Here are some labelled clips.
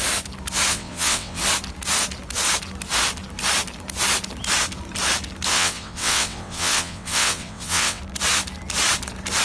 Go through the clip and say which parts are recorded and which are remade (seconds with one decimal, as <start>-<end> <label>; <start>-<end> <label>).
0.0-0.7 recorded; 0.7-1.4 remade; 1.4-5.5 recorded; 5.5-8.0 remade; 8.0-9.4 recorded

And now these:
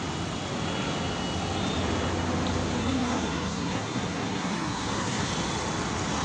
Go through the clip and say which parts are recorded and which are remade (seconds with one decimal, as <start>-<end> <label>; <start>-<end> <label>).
0.0-2.8 recorded; 2.8-5.3 remade; 5.3-6.2 recorded

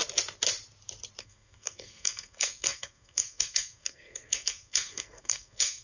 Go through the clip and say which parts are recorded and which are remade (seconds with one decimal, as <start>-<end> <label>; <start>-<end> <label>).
0.0-1.2 recorded; 1.2-5.8 remade

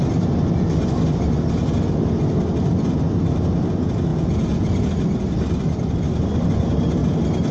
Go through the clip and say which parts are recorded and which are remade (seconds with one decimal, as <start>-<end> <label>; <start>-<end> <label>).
0.0-4.1 recorded; 4.1-4.9 remade; 4.9-7.5 recorded

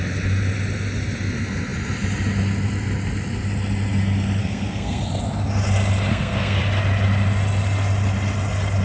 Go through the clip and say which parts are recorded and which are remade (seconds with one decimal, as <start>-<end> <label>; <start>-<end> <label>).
0.0-4.4 recorded; 4.4-5.0 remade; 5.0-6.1 recorded; 6.1-6.6 remade; 6.6-8.8 recorded